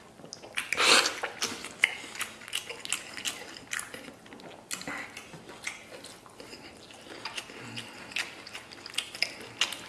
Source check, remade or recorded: recorded